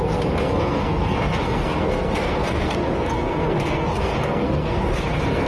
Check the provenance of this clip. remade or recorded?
remade